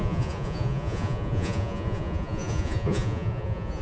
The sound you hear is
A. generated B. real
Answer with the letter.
A